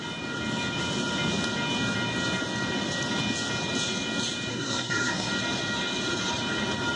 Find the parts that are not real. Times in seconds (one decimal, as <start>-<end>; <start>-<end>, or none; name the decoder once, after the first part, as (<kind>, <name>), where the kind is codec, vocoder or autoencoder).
4.5-5.3 (codec, SNAC)